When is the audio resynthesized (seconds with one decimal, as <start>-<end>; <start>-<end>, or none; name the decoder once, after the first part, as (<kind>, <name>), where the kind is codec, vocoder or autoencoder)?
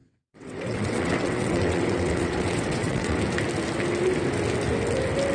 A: 0.0-3.2 (vocoder, WaveNeXt)